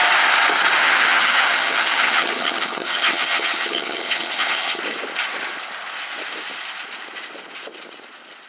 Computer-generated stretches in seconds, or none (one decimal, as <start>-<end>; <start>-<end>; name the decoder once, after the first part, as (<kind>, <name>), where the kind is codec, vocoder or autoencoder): 0.8-4.8 (vocoder, HiFi-GAN)